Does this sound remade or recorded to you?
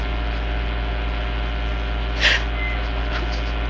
recorded